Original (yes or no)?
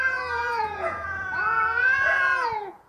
no